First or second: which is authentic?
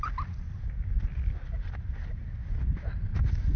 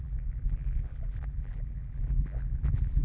first